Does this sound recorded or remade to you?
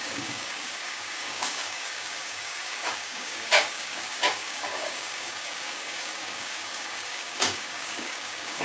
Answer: remade